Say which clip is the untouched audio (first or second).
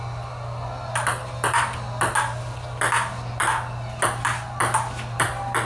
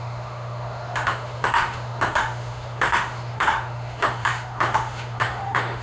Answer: first